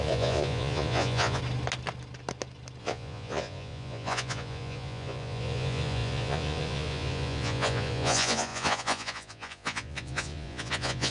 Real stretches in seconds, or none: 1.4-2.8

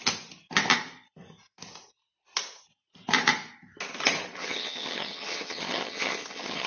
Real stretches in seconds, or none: 0.0-4.4

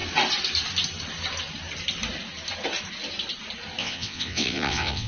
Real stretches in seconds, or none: 0.0-3.8

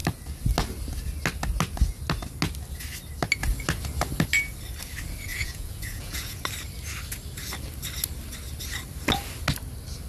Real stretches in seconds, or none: 0.0-5.3; 6.4-10.1

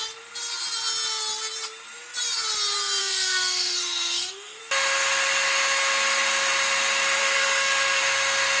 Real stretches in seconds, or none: 0.0-3.0; 4.6-7.2; 8.0-8.6

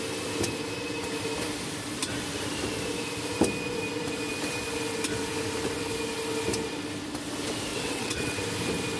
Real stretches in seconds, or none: 0.0-7.7; 8.4-9.0

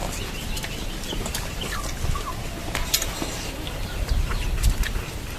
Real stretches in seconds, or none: 0.0-5.4